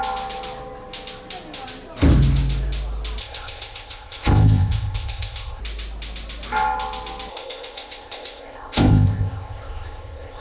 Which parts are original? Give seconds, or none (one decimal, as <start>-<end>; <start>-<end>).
0.0-3.2; 5.6-7.3

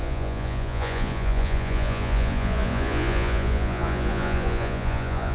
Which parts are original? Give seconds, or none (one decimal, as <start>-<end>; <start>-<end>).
none

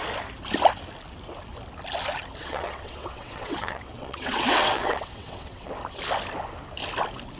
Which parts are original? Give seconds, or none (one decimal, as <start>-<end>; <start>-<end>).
0.0-2.4; 5.7-7.4

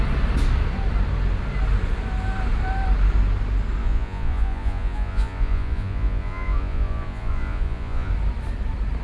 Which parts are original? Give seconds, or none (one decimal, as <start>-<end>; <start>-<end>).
0.0-3.8; 8.1-9.0

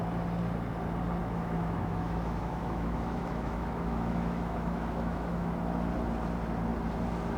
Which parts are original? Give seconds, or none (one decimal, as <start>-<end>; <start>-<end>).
0.0-1.2; 5.5-7.4

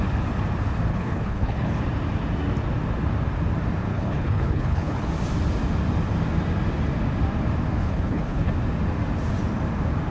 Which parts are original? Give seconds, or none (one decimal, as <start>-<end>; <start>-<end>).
0.0-0.9; 1.8-3.9; 5.1-7.8; 8.5-10.1

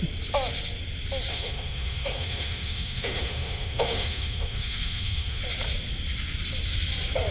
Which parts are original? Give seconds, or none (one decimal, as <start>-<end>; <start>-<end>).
0.0-1.3; 5.4-7.3

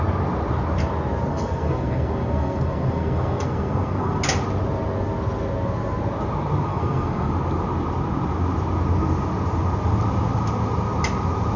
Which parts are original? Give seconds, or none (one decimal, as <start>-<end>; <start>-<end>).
0.0-1.3; 4.2-6.7; 7.3-11.6